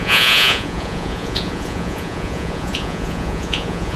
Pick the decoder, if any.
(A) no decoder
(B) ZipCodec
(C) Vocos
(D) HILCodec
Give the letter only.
C